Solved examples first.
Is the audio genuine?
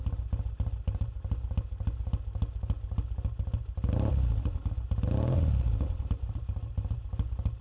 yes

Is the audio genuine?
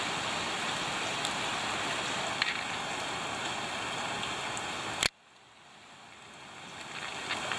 yes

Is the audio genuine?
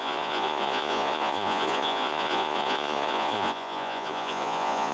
no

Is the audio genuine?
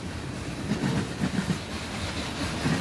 yes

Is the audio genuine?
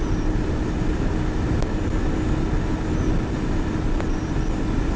yes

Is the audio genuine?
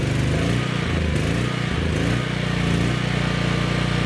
yes